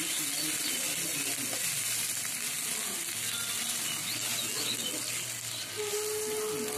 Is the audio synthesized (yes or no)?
no